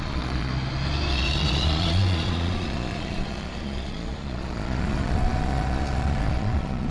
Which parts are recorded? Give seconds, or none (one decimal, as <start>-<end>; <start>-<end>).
0.5-1.1